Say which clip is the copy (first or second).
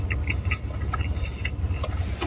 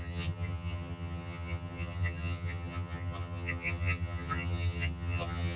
second